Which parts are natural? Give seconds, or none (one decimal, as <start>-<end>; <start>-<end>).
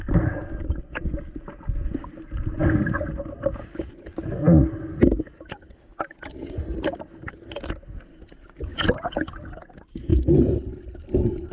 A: 0.0-11.5